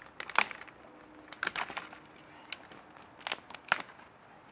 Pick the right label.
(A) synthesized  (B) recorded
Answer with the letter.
B